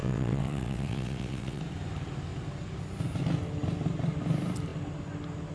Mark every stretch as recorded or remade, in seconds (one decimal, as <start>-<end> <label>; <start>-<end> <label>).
0.0-1.6 remade; 1.6-5.5 recorded

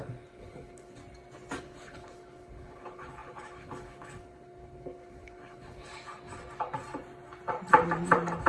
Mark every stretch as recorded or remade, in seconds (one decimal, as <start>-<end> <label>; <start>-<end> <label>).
0.0-1.0 remade; 1.0-1.6 recorded; 1.6-5.9 remade; 5.9-8.5 recorded